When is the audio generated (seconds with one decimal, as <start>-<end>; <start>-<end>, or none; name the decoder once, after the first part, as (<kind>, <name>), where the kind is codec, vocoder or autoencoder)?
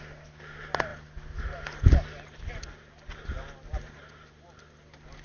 none